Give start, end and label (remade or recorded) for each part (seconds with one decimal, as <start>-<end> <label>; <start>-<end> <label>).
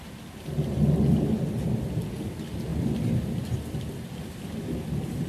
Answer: 0.0-2.7 recorded; 2.7-3.5 remade; 3.5-5.3 recorded